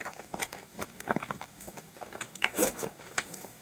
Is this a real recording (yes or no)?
no